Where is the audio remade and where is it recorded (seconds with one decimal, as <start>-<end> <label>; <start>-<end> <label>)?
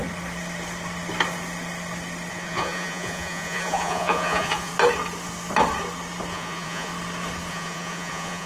0.0-2.3 recorded; 2.3-4.7 remade; 4.7-6.3 recorded; 6.3-6.9 remade; 6.9-7.5 recorded; 7.5-8.5 remade